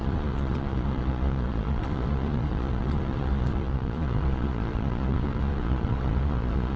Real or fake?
fake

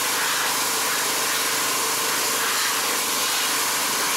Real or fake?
real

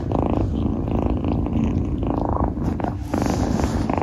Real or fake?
real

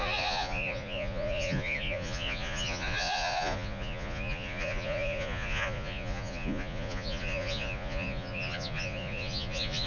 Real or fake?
fake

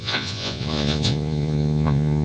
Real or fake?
fake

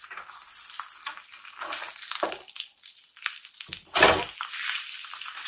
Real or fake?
real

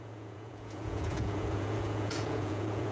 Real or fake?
fake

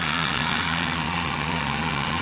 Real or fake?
fake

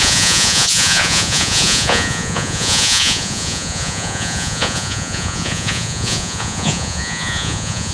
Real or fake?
fake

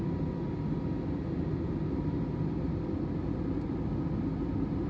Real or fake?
real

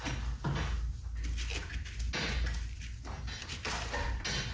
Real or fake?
real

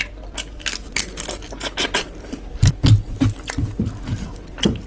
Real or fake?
real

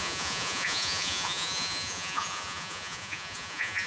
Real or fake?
fake